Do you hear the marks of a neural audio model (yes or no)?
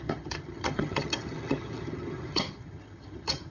yes